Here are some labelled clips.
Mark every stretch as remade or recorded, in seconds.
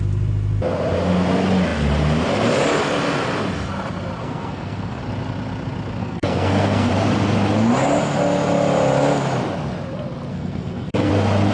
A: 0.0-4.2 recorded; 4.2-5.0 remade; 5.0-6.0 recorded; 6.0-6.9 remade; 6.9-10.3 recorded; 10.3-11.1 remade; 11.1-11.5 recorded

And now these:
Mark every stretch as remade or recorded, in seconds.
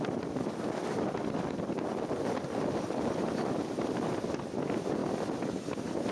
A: 0.0-6.1 recorded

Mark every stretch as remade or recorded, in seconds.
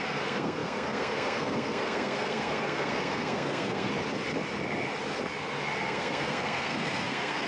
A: 0.0-3.9 remade; 3.9-5.8 recorded; 5.8-7.5 remade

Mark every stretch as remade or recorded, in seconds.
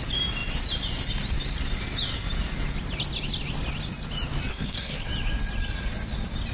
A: 0.0-4.5 recorded; 4.5-5.0 remade; 5.0-6.5 recorded